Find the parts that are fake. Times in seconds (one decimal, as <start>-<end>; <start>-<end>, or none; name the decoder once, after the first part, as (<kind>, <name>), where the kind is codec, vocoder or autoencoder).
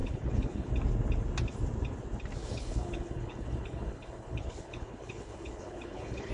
0.0-0.7 (codec, HILCodec); 2.4-6.3